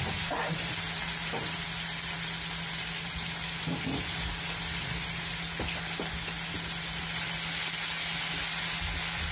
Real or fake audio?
real